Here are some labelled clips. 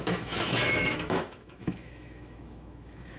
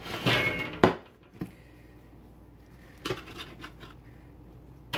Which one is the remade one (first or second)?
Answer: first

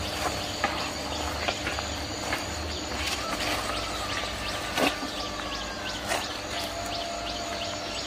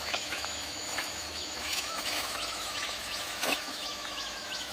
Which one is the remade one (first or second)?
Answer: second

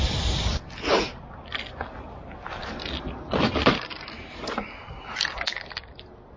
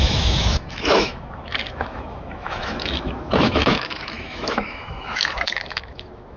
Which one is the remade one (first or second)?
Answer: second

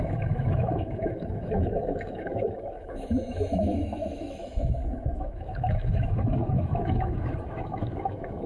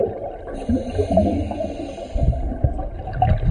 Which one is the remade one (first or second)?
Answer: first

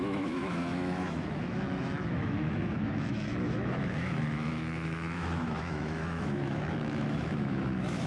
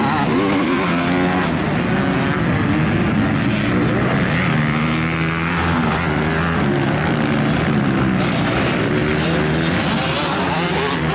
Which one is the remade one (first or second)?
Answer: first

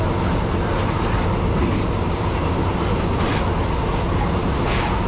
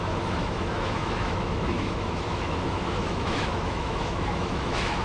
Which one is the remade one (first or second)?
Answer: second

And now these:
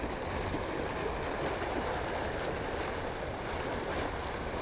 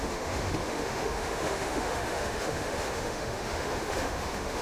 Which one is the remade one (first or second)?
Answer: second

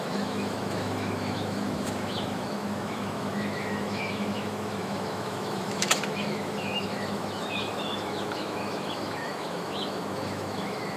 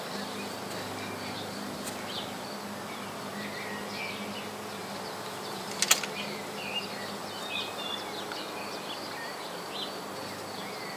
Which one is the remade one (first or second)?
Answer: first